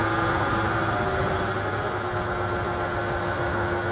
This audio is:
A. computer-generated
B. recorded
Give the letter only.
B